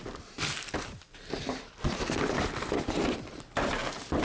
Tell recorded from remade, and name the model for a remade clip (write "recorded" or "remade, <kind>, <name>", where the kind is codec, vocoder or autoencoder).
recorded